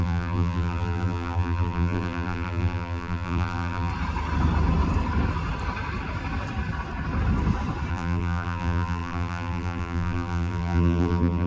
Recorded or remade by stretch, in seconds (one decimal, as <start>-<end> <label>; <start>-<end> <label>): 0.0-3.9 remade; 3.9-7.9 recorded; 7.9-11.5 remade